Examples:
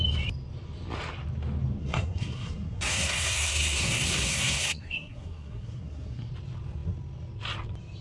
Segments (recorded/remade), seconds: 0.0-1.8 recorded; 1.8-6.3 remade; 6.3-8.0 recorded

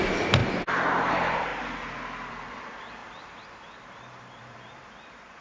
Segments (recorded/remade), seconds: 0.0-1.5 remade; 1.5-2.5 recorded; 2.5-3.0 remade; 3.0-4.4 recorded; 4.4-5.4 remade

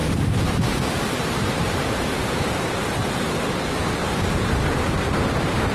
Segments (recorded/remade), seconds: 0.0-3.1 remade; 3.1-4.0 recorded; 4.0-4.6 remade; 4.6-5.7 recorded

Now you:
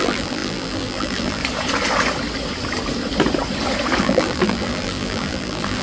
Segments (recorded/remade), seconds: 0.0-1.4 remade; 1.4-4.0 recorded; 4.0-5.8 remade

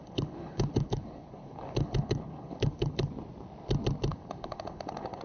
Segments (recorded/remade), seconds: 0.0-3.1 remade; 3.1-4.1 recorded; 4.1-5.2 remade

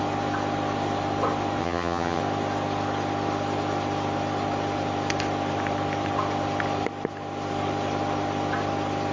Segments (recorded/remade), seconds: 0.0-1.6 recorded; 1.6-2.2 remade; 2.2-9.1 recorded

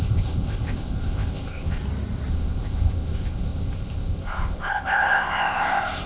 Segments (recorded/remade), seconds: 0.0-1.8 remade; 1.8-2.3 recorded; 2.3-6.1 remade

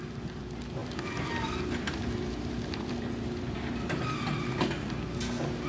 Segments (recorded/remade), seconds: 0.0-0.8 recorded; 0.8-4.2 remade; 4.2-5.7 recorded